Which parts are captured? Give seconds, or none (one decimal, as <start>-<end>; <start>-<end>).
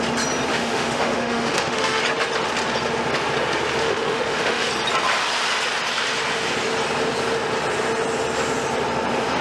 0.0-0.5; 2.0-3.8; 4.7-9.4